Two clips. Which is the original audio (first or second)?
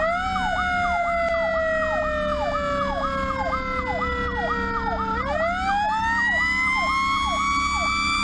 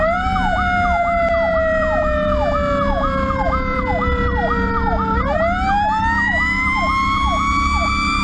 first